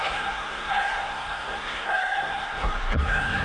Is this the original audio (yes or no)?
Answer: no